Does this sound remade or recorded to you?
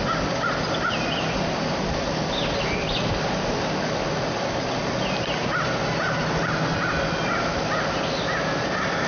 recorded